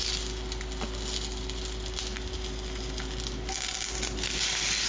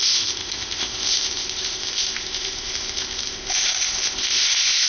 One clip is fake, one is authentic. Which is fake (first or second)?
second